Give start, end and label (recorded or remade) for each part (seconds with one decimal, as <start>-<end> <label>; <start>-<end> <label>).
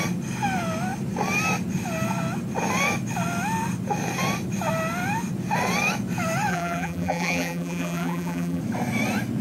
0.0-6.5 recorded; 6.5-8.6 remade; 8.6-9.4 recorded